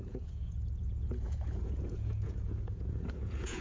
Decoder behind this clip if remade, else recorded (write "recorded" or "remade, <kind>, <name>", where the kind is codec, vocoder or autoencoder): remade, vocoder, Vocos